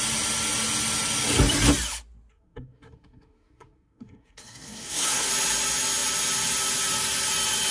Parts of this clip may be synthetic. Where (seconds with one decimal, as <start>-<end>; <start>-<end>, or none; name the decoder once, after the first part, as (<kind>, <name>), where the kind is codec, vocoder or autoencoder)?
2.3-5.3 (codec, SNAC)